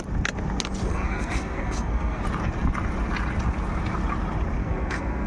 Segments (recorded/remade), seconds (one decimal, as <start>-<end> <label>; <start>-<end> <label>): 0.0-0.9 recorded; 0.9-2.2 remade; 2.2-4.6 recorded; 4.6-5.3 remade